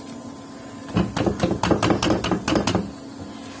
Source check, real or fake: real